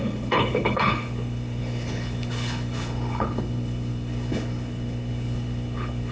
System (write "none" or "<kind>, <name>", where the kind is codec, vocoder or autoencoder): codec, HILCodec